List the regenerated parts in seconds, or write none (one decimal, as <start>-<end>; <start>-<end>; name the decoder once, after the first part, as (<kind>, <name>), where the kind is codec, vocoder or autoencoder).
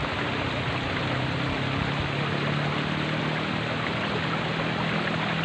none